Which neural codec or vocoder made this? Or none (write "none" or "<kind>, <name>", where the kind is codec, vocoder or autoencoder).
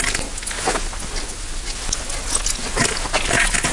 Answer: none